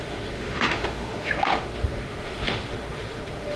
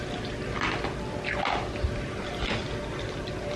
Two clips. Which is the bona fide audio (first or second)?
second